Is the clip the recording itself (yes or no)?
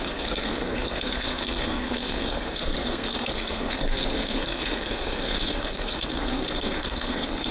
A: no